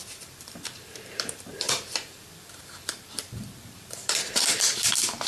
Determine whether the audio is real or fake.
fake